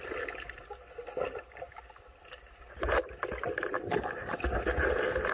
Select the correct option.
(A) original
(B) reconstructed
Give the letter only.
A